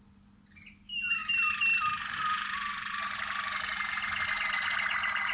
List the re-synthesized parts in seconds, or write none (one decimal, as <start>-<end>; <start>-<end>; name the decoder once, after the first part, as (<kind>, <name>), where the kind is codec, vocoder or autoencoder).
1.2-4.0 (vocoder, BigVGAN v2)